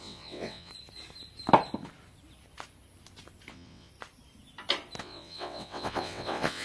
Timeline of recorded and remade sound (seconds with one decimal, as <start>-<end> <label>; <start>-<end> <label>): 0.0-0.7 remade; 0.7-3.5 recorded; 3.5-3.9 remade; 3.9-5.0 recorded; 5.0-6.6 remade